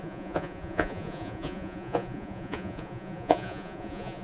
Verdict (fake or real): fake